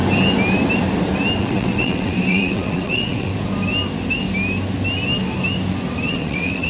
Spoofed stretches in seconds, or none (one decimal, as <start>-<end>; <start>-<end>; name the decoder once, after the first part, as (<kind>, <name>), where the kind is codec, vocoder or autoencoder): 1.4-3.3 (vocoder, WaveNeXt); 6.1-6.7